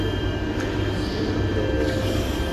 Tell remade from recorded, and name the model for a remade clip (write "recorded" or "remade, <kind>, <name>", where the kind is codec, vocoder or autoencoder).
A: recorded